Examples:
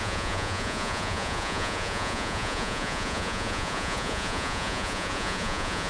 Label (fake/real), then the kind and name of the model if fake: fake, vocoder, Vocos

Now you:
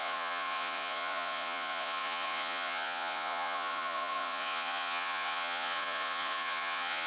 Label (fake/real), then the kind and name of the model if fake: fake, vocoder, Vocos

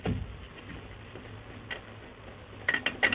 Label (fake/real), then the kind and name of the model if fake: real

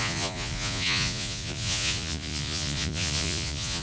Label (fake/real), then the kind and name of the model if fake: fake, vocoder, Vocos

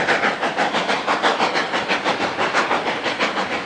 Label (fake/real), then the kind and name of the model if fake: real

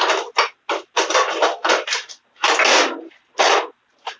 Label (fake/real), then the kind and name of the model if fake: real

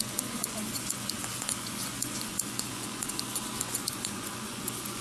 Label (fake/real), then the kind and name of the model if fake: fake, vocoder, Vocos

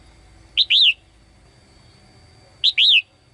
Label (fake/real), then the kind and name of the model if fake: real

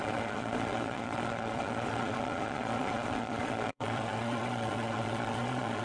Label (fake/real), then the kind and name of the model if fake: fake, vocoder, Vocos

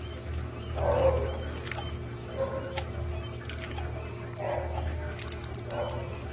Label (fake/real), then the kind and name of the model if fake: real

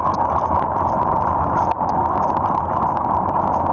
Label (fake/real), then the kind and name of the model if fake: real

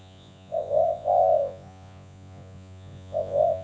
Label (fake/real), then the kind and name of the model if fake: fake, vocoder, Vocos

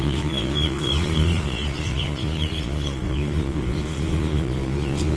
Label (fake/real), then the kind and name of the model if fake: fake, vocoder, Vocos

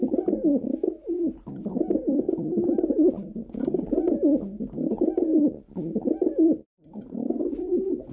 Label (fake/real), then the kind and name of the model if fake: real